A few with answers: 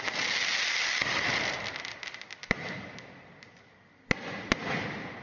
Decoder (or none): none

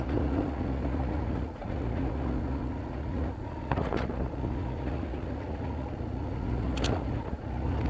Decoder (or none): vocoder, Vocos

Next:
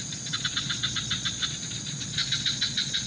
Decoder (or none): vocoder, Vocos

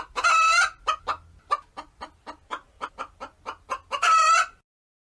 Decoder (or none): none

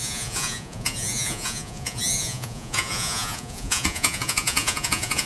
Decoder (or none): vocoder, Vocos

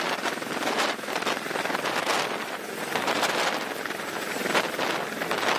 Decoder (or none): none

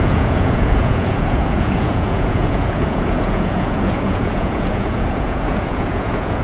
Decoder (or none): vocoder, Vocos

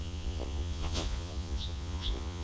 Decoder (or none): vocoder, Vocos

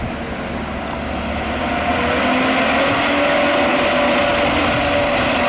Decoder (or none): none